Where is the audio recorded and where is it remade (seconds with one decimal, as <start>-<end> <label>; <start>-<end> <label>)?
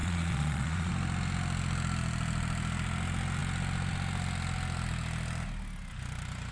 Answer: 0.0-0.9 remade; 0.9-6.5 recorded